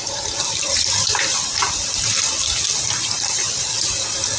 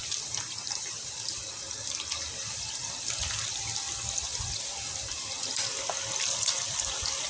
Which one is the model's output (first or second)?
second